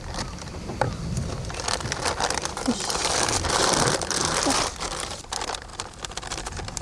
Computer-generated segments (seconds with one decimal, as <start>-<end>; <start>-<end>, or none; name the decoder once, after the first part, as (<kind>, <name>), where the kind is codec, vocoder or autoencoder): 0.0-5.7 (vocoder, BigVGAN v2)